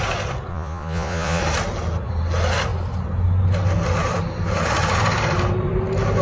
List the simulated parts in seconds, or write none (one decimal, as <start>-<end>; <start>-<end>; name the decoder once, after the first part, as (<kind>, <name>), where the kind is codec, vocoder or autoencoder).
0.5-1.4 (vocoder, Vocos)